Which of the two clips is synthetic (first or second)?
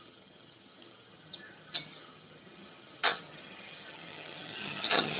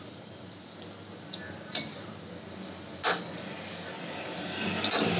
first